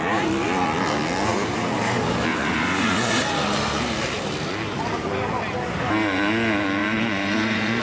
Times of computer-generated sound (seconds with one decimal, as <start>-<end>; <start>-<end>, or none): 2.3-3.1; 6.8-7.8